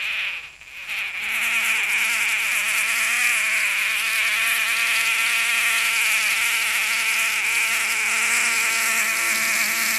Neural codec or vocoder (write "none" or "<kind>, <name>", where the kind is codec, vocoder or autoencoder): none